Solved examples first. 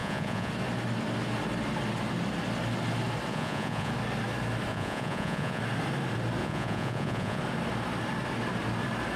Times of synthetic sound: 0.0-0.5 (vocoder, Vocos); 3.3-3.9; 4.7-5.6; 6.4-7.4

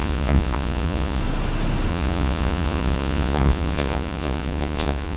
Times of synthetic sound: 0.0-1.2 (vocoder, Vocos); 1.9-5.2

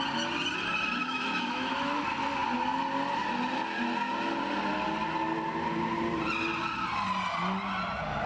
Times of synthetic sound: 1.0-2.0 (autoencoder, DAC-VAE)

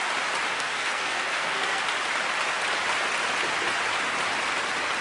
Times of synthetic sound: 0.5-1.8 (codec, SNAC)

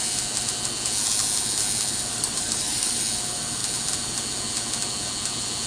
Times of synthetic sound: 2.1-3.0 (codec, DAC)

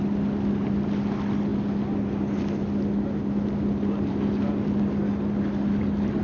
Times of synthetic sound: none

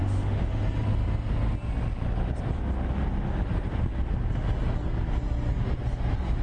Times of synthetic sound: 0.0-0.5 (autoencoder, DAC-VAE)

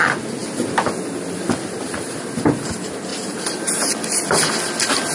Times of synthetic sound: 0.4-2.2 (vocoder, BigVGAN v2); 3.1-3.9